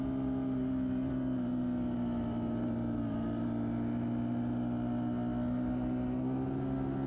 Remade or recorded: recorded